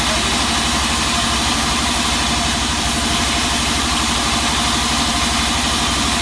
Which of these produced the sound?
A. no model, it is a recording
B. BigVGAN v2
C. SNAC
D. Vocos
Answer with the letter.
B